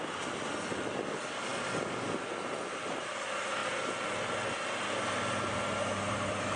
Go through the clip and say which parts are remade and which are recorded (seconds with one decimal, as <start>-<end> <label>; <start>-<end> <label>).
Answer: 0.0-6.6 recorded